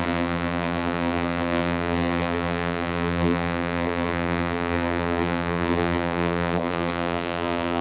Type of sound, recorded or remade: remade